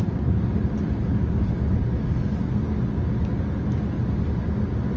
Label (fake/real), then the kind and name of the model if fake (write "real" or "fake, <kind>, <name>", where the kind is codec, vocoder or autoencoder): real